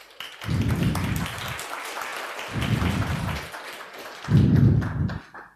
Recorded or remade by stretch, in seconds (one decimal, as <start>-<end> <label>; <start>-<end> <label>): 0.0-5.6 recorded